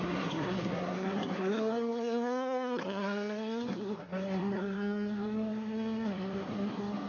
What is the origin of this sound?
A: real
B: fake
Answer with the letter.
B